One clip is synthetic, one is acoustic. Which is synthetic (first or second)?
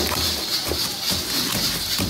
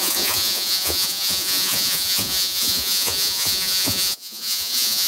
second